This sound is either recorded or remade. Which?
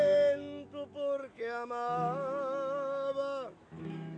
remade